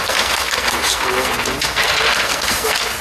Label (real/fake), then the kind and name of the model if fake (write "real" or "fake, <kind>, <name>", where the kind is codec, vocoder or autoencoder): fake, codec, SNAC